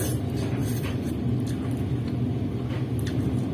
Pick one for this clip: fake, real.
real